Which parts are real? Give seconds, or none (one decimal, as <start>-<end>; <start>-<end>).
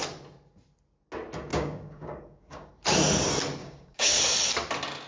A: 0.0-1.5; 2.7-3.6; 4.2-5.1